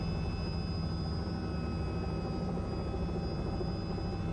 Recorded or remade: recorded